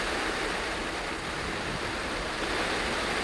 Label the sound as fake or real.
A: real